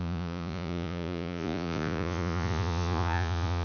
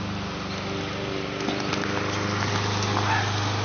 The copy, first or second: first